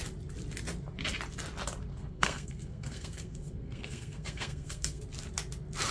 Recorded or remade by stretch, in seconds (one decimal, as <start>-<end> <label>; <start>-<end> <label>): 0.0-1.9 recorded; 1.9-5.0 remade; 5.0-5.9 recorded